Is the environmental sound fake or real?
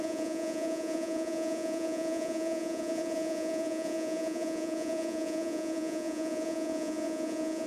fake